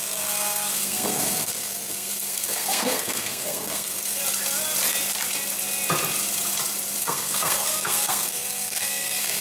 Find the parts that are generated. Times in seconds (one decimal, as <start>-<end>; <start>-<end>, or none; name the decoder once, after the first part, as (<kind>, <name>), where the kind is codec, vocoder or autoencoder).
0.0-4.2 (codec, SNAC); 7.0-9.4